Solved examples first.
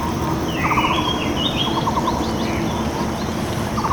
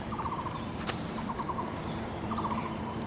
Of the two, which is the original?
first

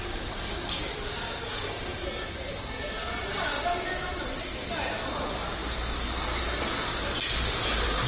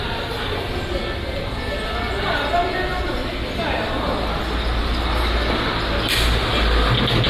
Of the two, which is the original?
second